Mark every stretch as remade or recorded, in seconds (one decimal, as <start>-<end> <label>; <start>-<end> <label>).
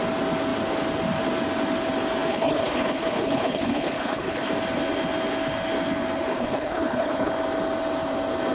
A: 0.0-2.3 recorded; 2.3-4.5 remade; 4.5-6.3 recorded; 6.3-7.3 remade; 7.3-8.5 recorded